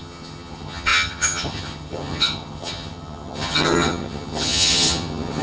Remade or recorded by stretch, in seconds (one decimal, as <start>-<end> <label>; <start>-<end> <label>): 0.0-5.4 remade